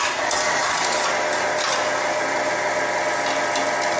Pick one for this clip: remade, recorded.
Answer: recorded